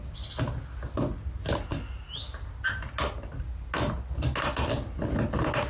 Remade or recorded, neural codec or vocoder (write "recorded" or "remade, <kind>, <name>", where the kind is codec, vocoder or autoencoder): recorded